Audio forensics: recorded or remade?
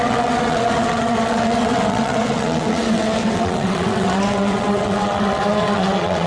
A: remade